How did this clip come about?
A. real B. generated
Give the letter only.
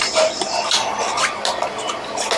A